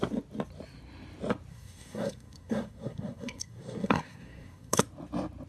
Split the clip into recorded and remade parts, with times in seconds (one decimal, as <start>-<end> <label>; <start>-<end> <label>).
0.0-1.5 recorded; 1.5-4.8 remade; 4.8-5.5 recorded